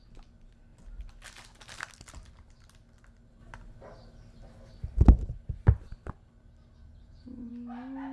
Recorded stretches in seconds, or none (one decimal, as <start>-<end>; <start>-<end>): 0.0-6.8; 7.5-8.1